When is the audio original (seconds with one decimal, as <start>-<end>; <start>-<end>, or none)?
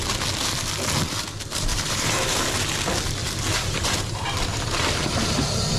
0.0-1.7; 2.5-3.2; 4.9-5.8